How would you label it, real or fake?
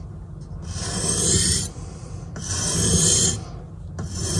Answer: real